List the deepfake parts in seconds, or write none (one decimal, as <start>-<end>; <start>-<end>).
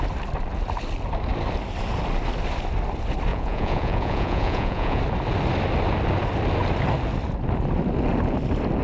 3.3-5.0